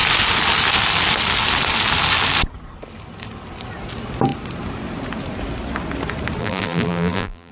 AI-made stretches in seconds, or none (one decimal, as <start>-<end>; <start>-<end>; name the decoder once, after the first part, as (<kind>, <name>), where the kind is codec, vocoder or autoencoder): 6.4-7.5 (vocoder, BigVGAN v2)